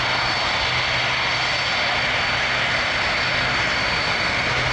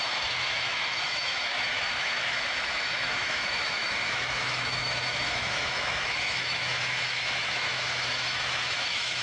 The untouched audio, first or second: first